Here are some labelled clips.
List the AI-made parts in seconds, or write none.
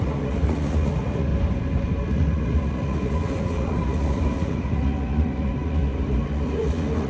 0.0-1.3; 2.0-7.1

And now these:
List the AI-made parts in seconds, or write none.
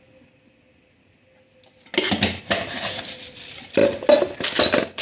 none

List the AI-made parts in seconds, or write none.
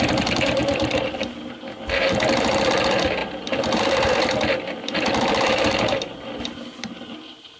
0.6-1.4; 3.2-7.6